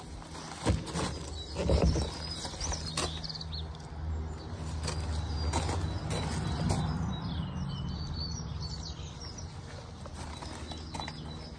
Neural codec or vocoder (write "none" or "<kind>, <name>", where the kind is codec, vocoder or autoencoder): none